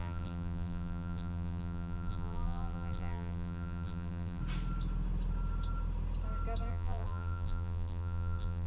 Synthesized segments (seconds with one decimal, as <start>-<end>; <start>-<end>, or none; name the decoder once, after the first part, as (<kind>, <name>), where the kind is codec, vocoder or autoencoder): 0.0-4.4 (vocoder, BigVGAN v2); 6.7-8.7